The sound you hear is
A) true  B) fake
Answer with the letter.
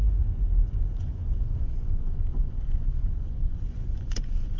B